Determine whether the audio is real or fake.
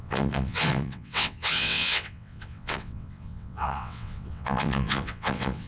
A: fake